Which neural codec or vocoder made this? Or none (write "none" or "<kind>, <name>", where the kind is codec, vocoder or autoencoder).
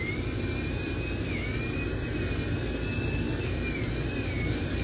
none